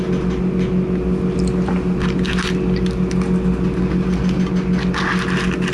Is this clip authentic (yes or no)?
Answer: yes